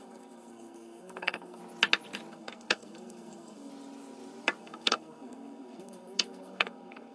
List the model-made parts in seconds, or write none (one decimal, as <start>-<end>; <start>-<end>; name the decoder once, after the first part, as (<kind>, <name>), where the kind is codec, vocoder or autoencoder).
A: 0.0-1.6 (codec, SNAC); 2.3-3.7; 4.6-7.1